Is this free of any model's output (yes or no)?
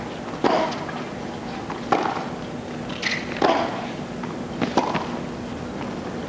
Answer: yes